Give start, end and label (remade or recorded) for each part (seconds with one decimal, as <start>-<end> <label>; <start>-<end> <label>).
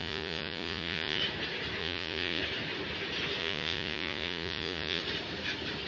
0.0-1.2 remade; 1.2-1.8 recorded; 1.8-2.4 remade; 2.4-3.4 recorded; 3.4-5.0 remade; 5.0-5.9 recorded